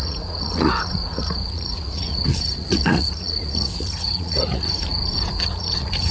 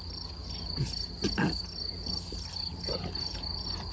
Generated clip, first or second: first